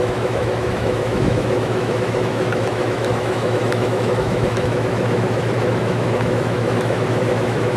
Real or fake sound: fake